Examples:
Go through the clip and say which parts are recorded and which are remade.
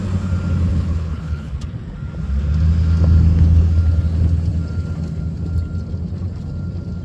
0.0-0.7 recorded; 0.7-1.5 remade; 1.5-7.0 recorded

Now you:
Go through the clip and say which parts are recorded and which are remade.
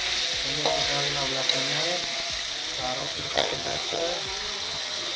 0.0-3.0 recorded; 3.0-4.0 remade; 4.0-4.6 recorded; 4.6-5.2 remade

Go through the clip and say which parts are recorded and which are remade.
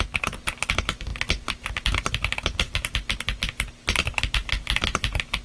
0.0-5.4 recorded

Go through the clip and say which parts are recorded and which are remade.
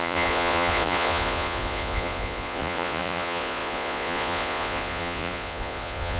0.0-6.2 remade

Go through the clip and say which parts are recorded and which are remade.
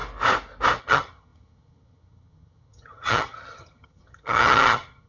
0.0-0.8 recorded; 0.8-5.1 remade